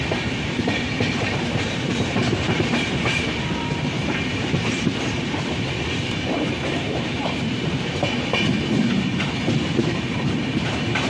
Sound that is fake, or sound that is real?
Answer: fake